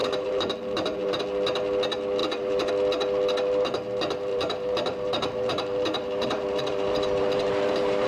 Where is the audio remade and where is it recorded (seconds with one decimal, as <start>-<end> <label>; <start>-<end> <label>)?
0.0-1.2 remade; 1.2-2.2 recorded; 2.2-2.7 remade; 2.7-4.3 recorded; 4.3-8.1 remade